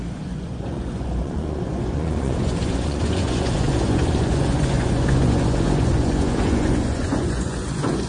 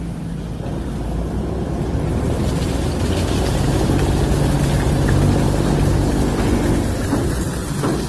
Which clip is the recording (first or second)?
second